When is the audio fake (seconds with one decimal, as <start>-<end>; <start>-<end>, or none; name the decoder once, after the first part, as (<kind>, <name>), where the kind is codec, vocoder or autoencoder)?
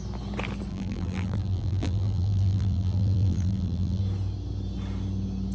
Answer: 0.7-4.0 (vocoder, BigVGAN v2)